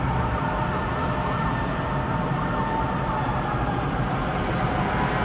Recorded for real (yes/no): yes